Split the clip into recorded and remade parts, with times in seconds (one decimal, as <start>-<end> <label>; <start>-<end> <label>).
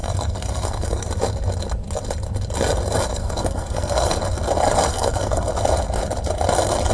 0.0-1.1 remade; 1.1-3.1 recorded; 3.1-4.2 remade; 4.2-4.9 recorded; 4.9-5.5 remade; 5.5-6.9 recorded